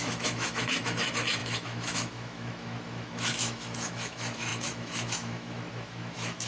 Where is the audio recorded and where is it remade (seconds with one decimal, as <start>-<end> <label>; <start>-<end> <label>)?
0.0-6.5 remade